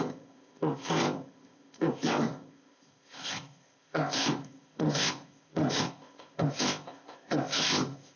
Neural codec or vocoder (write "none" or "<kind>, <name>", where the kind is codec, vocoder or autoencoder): codec, ZipCodec